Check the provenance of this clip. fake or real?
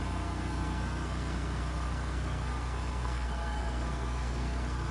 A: fake